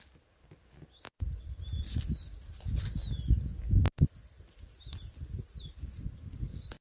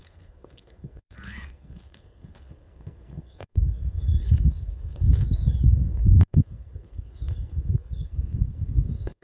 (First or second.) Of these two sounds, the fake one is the second